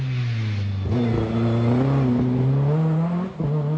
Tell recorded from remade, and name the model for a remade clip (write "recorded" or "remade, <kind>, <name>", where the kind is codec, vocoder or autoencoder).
recorded